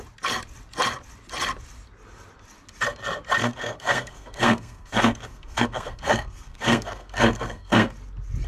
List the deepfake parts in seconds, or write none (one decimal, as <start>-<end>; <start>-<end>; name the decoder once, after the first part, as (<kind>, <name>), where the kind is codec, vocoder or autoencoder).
3.4-7.9 (codec, SNAC)